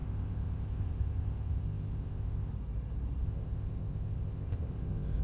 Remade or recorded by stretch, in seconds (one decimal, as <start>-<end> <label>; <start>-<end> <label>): 0.0-2.5 remade; 2.5-3.2 recorded; 3.2-5.2 remade